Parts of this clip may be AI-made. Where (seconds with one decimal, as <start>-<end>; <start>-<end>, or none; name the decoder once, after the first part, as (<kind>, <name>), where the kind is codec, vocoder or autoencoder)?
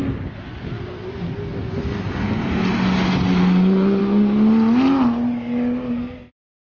none